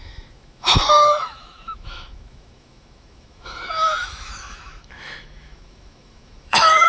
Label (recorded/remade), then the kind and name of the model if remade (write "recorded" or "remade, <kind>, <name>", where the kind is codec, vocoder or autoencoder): remade, autoencoder, DAC-VAE